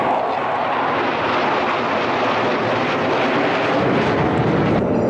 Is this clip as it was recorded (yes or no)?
yes